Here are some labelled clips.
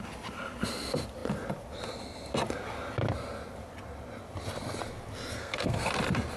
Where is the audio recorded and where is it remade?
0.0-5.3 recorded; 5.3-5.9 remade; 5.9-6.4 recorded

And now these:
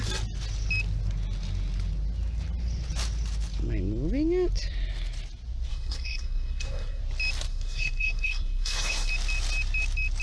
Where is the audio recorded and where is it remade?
0.0-5.7 recorded; 5.7-7.0 remade; 7.0-7.5 recorded; 7.5-9.1 remade; 9.1-10.2 recorded

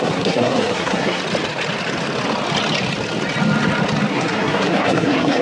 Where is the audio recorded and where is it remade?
0.0-1.2 remade; 1.2-4.1 recorded; 4.1-5.4 remade

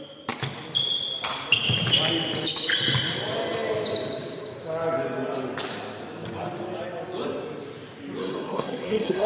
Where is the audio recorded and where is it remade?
0.0-8.2 recorded; 8.2-9.3 remade

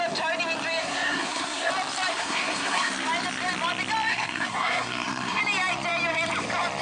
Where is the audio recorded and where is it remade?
0.0-0.8 recorded; 0.8-1.7 remade; 1.7-2.1 recorded; 2.1-2.9 remade; 2.9-4.1 recorded; 4.1-5.4 remade; 5.4-6.8 recorded

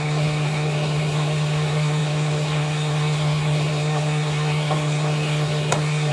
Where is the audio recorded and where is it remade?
0.0-6.1 remade

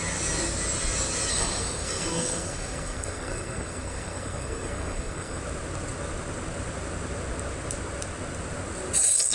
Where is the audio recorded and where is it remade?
0.0-1.3 recorded; 1.3-5.4 remade; 5.4-9.3 recorded